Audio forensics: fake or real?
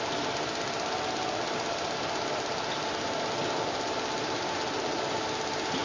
real